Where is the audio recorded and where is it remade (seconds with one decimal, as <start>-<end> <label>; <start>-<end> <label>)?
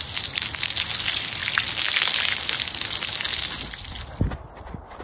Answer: 0.0-5.0 recorded